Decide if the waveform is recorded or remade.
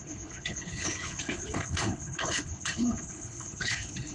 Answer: remade